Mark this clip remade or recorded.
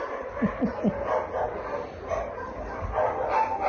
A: recorded